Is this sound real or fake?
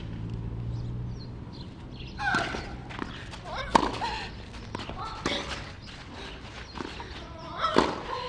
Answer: real